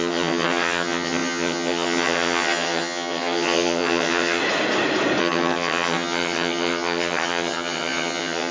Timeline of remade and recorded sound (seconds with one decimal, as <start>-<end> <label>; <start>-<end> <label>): 0.0-4.4 remade; 4.4-5.2 recorded; 5.2-8.5 remade